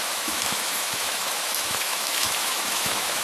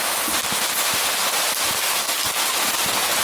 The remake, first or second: first